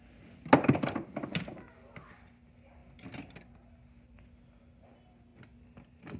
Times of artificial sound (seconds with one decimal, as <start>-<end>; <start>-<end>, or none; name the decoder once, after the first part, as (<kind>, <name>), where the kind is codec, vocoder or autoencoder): none